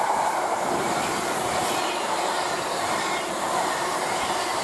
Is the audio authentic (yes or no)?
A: no